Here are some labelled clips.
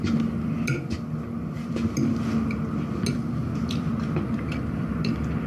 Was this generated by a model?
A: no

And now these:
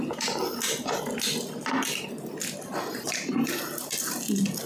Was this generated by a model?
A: no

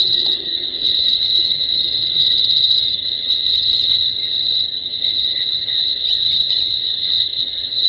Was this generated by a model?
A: yes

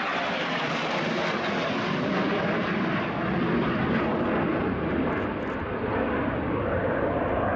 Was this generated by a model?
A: no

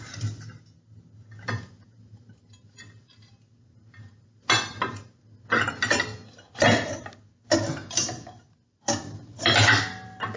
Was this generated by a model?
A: no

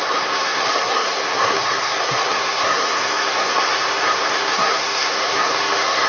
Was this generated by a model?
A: yes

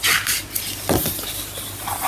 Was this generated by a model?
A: no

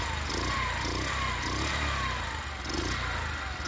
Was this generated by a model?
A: no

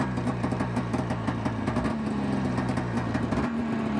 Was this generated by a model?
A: no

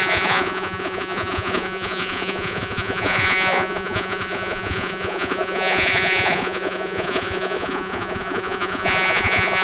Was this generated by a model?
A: yes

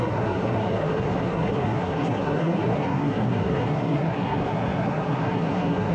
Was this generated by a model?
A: yes